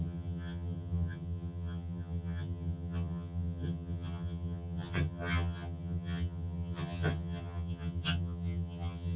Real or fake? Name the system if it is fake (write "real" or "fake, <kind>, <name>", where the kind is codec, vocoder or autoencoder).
fake, vocoder, HiFi-GAN